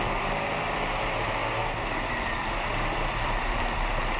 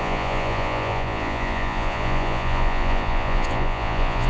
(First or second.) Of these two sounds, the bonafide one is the first